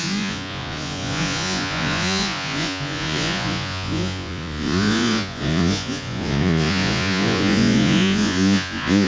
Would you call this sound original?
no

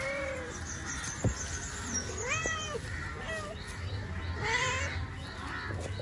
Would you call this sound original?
yes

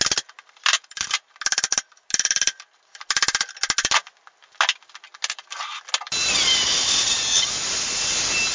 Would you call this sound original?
yes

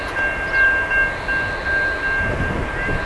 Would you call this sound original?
yes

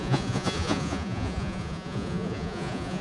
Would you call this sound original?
no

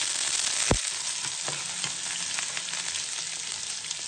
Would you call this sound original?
yes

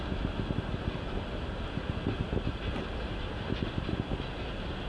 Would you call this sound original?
yes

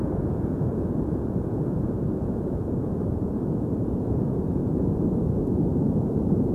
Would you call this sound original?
no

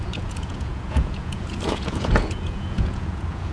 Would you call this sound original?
no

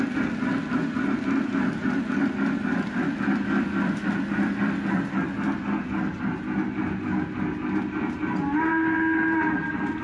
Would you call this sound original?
yes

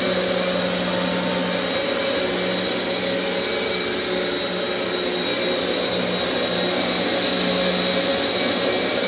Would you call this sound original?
yes